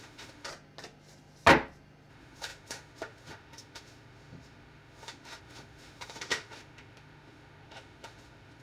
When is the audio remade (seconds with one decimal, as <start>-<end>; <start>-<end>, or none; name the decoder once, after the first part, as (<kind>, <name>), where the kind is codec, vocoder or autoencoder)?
0.0-0.5 (autoencoder, DAC-VAE); 2.1-8.6